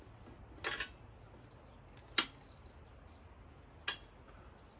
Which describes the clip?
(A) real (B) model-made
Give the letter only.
A